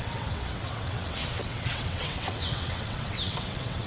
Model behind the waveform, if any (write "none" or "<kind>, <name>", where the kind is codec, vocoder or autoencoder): vocoder, WaveNeXt